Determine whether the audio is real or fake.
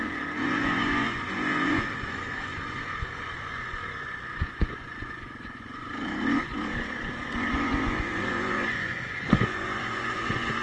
fake